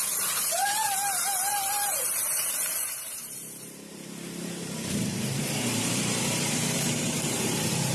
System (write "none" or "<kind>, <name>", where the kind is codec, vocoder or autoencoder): vocoder, BigVGAN v2